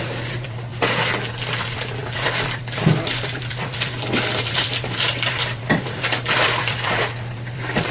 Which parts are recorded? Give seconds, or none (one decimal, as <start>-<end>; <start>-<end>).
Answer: 0.7-1.3